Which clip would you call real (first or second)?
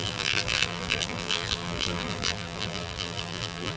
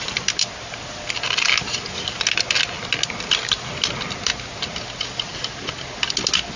second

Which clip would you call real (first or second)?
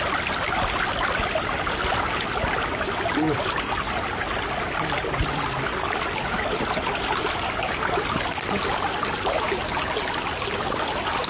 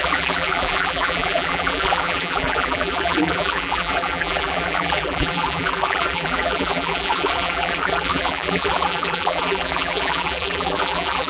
first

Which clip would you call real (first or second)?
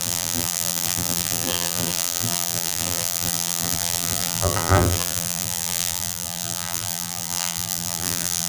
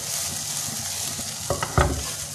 second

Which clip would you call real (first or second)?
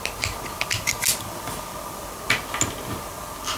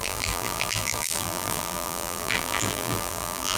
first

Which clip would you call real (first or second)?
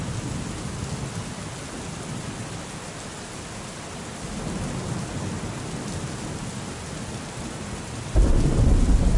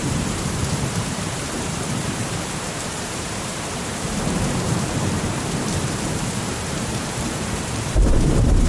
first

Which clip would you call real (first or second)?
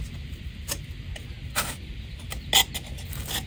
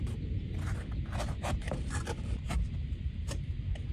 first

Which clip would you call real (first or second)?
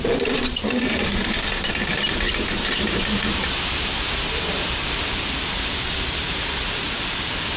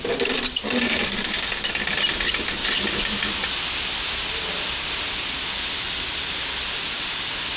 second